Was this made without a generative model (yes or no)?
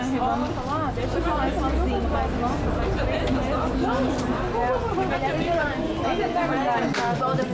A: yes